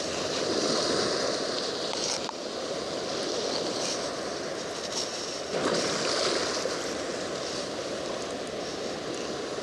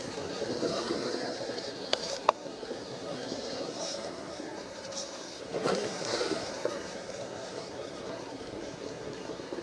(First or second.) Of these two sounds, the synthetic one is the second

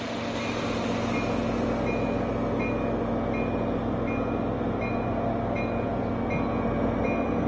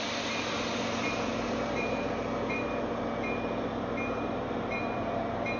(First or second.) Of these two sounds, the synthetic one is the second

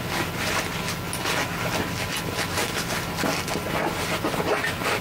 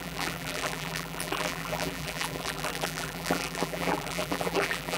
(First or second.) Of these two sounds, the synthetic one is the second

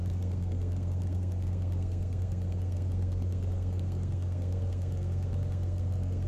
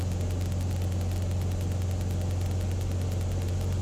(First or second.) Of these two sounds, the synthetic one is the first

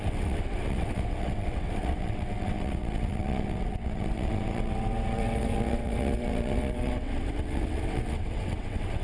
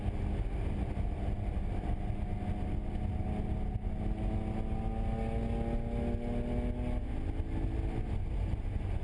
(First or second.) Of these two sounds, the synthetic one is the first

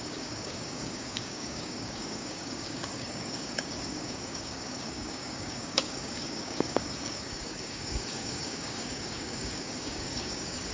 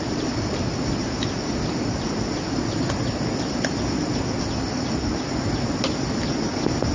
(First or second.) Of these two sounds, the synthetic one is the first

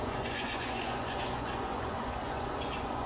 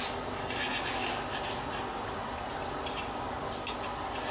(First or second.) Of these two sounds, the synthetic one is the first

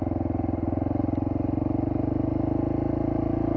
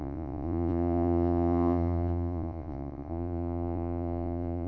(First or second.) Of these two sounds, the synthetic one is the second